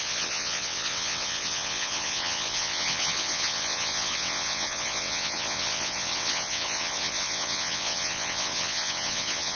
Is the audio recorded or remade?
remade